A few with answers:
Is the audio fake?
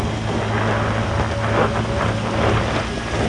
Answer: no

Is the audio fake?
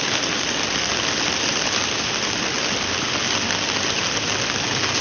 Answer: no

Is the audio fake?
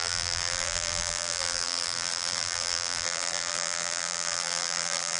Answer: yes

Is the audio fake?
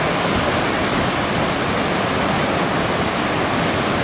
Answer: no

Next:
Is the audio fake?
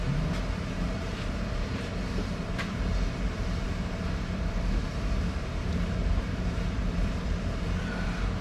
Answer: yes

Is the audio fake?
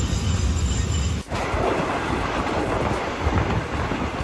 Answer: no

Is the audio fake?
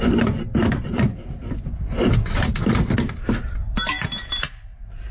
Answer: yes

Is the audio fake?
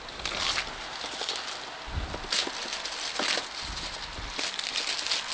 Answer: no